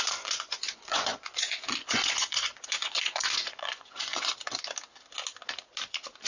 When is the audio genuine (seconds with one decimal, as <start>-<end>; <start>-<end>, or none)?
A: 4.3-6.3

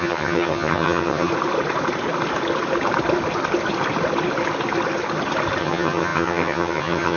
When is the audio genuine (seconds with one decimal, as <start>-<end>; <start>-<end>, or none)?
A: 1.3-5.6

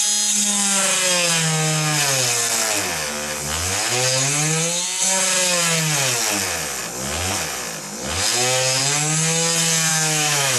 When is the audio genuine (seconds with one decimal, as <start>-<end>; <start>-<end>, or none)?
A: 0.0-9.9

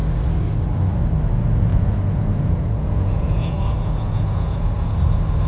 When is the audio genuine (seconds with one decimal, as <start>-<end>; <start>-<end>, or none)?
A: 0.0-1.7; 5.0-5.5

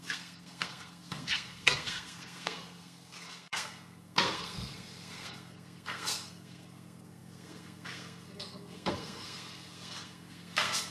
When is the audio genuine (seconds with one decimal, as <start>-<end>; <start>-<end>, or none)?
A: none

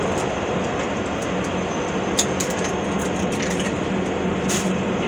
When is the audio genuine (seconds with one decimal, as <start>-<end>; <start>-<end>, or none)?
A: 0.0-5.1

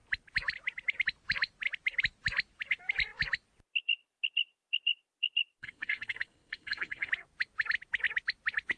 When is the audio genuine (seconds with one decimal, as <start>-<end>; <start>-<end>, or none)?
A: 0.0-5.6; 7.1-8.8